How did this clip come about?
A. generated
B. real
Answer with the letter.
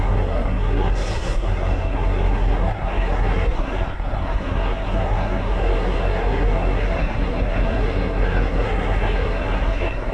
A